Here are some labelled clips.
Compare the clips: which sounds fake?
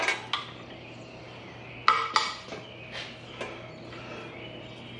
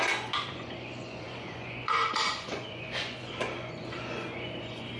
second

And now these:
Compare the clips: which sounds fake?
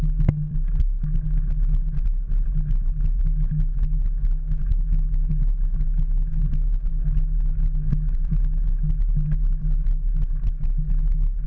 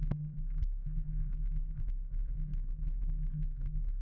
second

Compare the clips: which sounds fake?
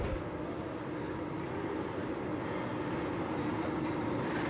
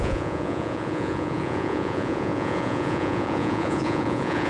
second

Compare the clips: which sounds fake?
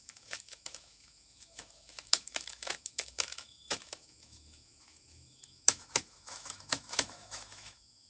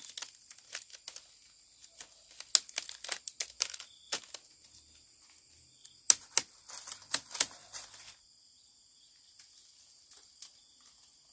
first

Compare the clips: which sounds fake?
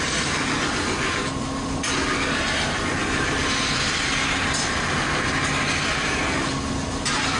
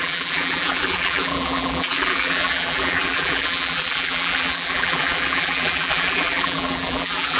second